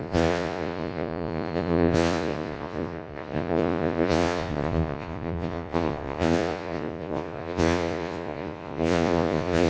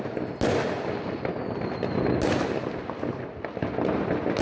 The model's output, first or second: first